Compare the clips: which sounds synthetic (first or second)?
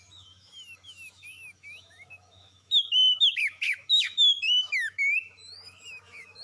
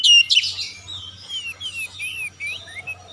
first